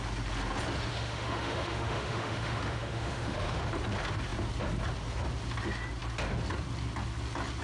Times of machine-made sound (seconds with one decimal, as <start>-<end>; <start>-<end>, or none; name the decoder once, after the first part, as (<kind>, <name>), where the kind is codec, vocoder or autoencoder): 0.9-3.7 (autoencoder, DAC-VAE)